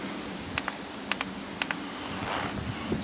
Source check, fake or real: real